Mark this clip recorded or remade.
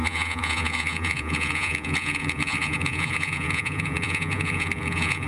remade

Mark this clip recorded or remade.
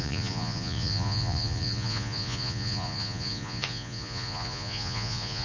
remade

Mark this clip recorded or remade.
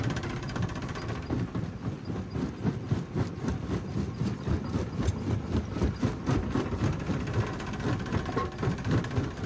recorded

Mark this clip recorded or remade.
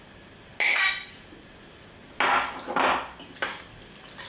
recorded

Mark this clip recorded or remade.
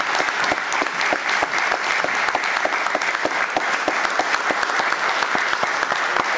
recorded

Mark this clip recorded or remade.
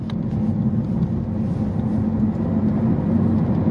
recorded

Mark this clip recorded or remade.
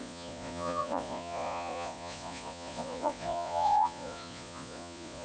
remade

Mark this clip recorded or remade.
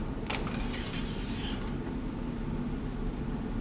recorded